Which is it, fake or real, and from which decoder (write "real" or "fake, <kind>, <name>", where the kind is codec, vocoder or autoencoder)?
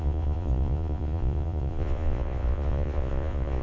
fake, vocoder, Vocos